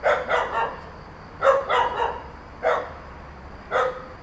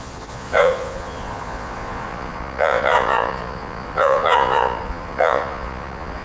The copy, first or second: second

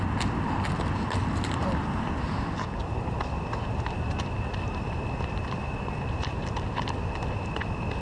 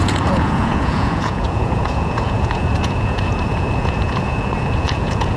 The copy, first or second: second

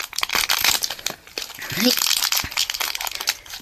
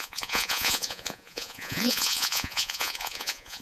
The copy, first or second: second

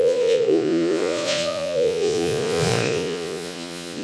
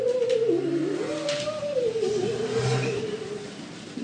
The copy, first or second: first